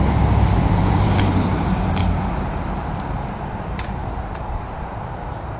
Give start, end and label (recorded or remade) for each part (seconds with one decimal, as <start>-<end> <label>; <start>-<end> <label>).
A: 0.0-2.0 remade; 2.0-3.6 recorded; 3.6-5.6 remade